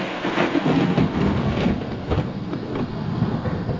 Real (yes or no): no